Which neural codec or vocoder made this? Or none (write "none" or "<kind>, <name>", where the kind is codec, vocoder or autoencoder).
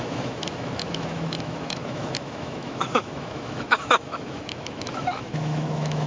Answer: autoencoder, DAC-VAE